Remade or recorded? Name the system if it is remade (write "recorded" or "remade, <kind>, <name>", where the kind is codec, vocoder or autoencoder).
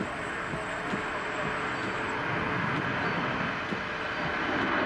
recorded